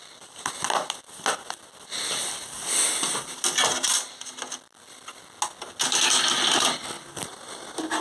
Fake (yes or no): no